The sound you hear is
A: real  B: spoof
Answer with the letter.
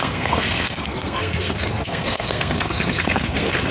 B